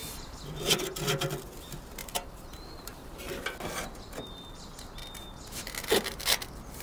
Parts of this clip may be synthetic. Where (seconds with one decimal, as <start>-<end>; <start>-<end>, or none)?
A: 0.0-0.7; 2.0-3.1

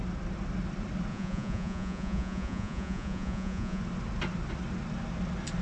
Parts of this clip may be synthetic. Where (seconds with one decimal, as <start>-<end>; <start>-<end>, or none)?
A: 1.1-3.8

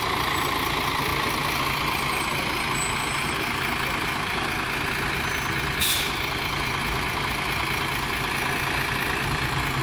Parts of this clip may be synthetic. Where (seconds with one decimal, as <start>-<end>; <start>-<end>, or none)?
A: none

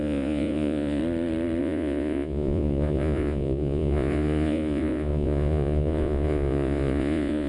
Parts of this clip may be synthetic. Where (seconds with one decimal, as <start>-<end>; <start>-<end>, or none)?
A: 0.0-1.0; 1.6-7.5

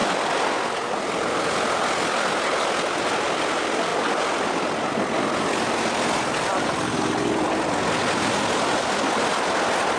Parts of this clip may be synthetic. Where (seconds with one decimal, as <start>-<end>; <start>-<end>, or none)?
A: none